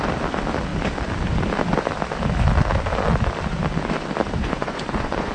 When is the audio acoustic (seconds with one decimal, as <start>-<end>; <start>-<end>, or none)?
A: 0.0-4.4

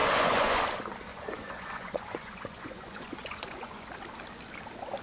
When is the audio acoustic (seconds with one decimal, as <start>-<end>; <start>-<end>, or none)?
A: 0.6-1.1; 3.9-5.0

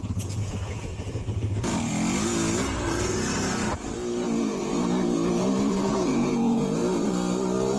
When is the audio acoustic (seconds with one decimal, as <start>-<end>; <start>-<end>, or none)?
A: 1.7-5.7; 6.8-7.8

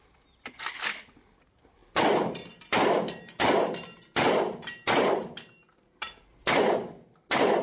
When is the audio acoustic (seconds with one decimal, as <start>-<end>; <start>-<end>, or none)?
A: 0.0-7.6

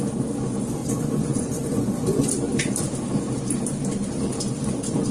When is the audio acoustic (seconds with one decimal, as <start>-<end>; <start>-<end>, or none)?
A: 0.0-0.8; 2.3-5.1

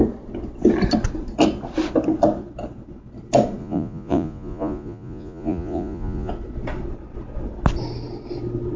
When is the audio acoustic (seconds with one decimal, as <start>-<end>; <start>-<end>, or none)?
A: 0.0-3.6; 6.3-8.8

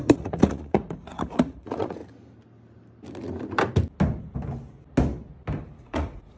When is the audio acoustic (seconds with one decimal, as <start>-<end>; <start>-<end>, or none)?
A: 2.0-5.8